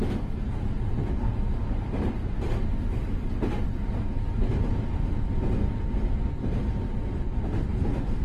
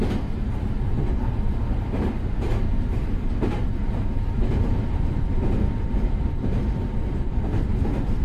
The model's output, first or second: second